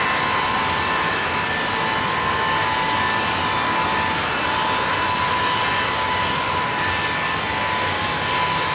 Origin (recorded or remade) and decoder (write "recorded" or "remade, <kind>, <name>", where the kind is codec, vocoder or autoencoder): recorded